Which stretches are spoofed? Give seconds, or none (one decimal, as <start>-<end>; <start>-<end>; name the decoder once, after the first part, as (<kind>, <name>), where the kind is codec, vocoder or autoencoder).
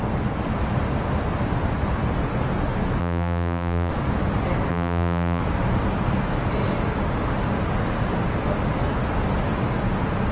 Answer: 3.0-3.9 (vocoder, BigVGAN v2); 4.7-5.4